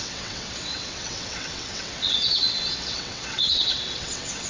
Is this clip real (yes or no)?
no